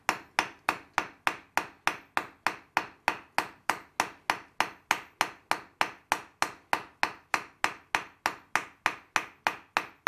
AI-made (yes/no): no